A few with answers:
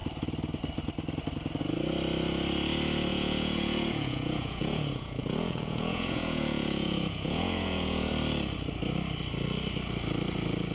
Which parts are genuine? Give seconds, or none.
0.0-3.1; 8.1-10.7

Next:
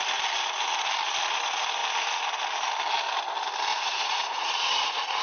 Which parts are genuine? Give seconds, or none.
0.0-3.7

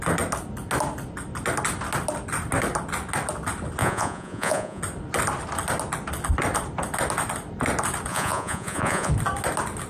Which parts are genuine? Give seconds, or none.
0.0-3.8; 4.8-8.1; 9.1-9.9

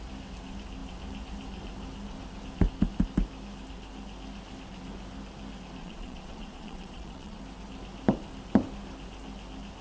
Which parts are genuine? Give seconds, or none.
0.0-5.8; 7.4-9.8

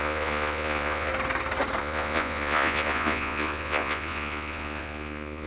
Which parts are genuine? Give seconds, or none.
1.1-1.8